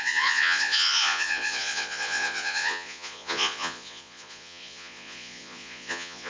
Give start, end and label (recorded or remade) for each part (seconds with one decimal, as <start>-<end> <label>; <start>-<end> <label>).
0.0-6.3 remade